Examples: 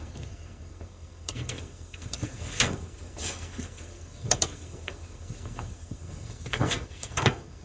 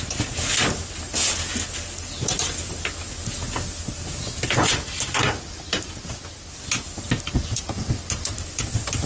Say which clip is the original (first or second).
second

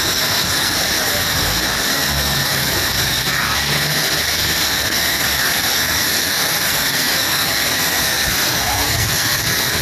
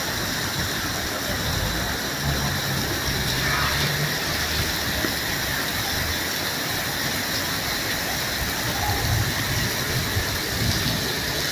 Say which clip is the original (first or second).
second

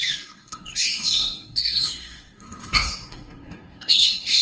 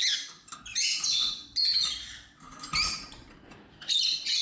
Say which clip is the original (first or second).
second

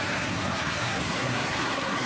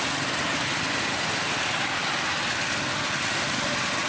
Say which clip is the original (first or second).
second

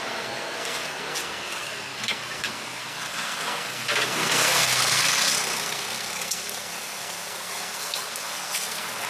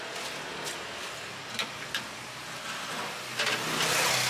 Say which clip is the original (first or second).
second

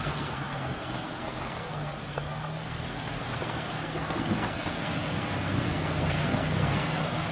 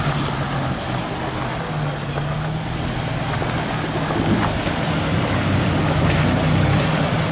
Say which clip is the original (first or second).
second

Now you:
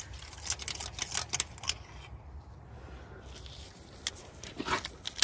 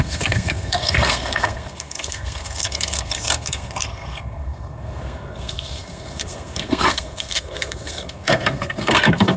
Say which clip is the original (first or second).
first